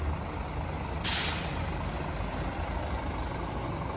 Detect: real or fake real